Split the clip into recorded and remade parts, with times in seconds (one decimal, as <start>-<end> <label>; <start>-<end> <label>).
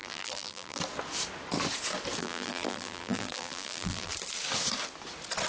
0.0-0.8 remade; 0.8-2.2 recorded; 2.2-4.1 remade; 4.1-5.5 recorded